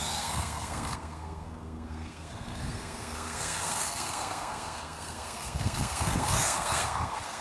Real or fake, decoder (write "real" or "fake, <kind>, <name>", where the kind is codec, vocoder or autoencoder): fake, codec, SNAC